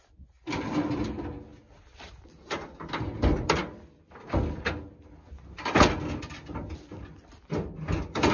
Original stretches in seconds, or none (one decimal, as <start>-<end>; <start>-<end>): 0.0-8.3